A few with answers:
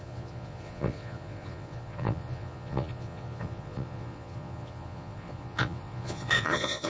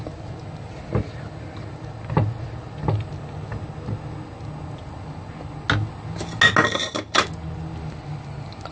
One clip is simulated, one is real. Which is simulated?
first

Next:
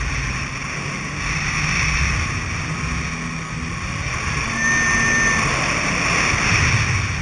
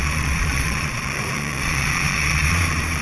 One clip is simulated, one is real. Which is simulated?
second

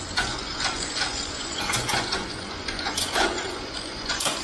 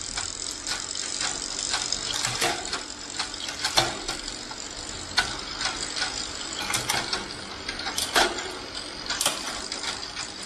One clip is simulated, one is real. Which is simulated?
first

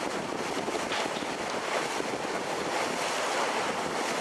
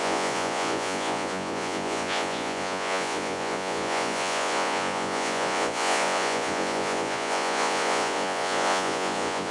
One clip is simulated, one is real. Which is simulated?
second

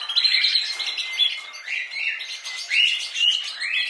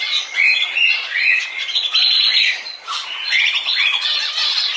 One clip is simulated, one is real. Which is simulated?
second